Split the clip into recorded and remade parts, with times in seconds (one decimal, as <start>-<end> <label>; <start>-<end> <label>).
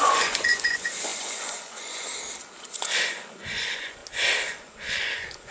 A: 0.0-2.1 remade; 2.1-2.6 recorded; 2.6-4.0 remade; 4.0-4.5 recorded; 4.5-5.5 remade